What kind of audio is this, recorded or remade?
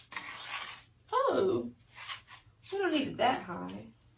recorded